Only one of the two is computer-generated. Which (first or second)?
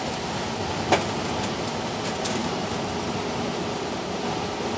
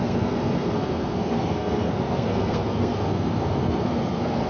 second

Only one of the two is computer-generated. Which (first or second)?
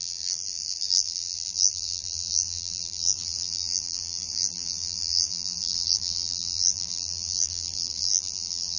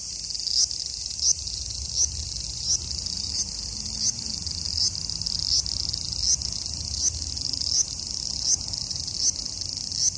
first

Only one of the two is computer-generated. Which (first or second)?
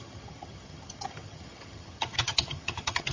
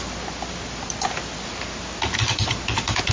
first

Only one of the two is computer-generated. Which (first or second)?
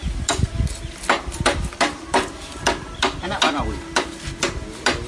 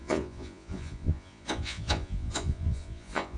second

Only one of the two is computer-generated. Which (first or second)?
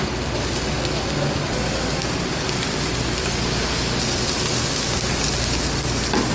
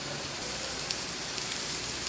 second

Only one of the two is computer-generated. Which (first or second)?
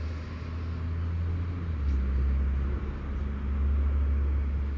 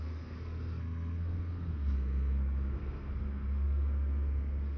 second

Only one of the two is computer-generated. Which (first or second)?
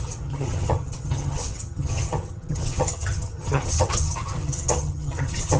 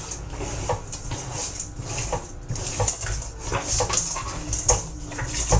first